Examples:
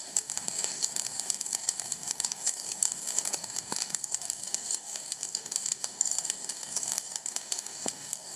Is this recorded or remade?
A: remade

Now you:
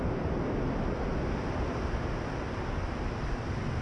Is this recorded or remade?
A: recorded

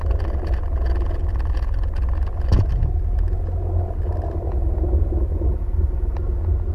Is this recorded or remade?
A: recorded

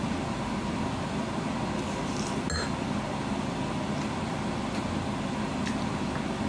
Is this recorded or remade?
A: recorded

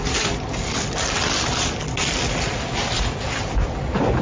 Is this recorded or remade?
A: recorded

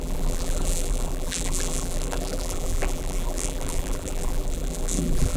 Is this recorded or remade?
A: remade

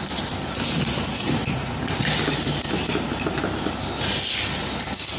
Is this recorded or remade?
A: recorded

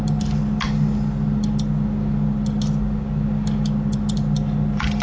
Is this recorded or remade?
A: recorded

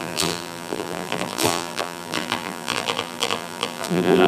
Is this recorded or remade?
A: remade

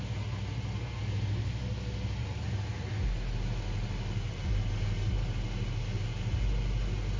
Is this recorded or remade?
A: recorded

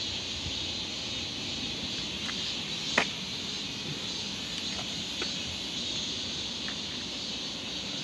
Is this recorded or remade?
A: recorded